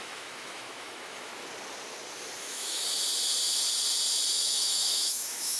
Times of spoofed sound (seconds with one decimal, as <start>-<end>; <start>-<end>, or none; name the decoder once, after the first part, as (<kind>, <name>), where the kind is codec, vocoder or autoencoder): 0.0-1.3 (autoencoder, DAC-VAE); 2.4-2.8; 4.3-5.6